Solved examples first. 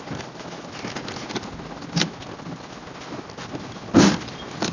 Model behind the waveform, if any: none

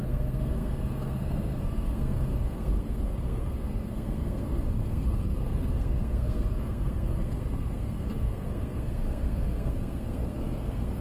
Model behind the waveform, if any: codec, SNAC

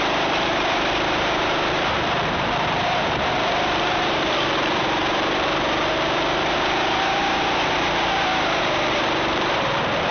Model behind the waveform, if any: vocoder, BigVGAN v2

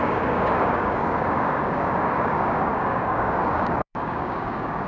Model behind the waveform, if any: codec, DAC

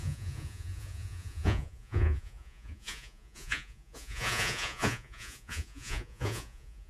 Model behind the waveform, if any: vocoder, Vocos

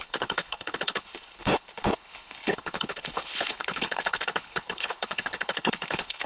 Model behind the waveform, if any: codec, HILCodec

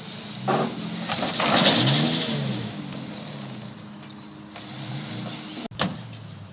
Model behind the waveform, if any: none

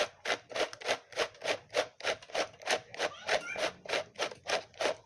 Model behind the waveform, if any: none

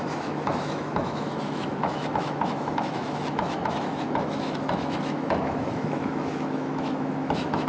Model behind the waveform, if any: autoencoder, DAC-VAE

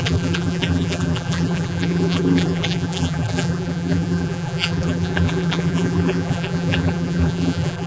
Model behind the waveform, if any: vocoder, BigVGAN v2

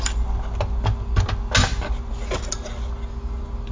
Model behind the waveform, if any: none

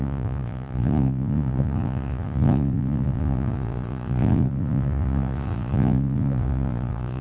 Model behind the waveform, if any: vocoder, Vocos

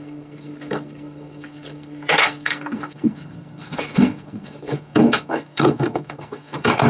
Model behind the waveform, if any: codec, SNAC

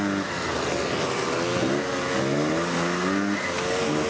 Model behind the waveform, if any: none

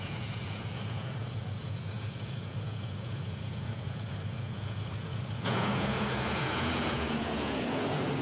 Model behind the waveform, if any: vocoder, Vocos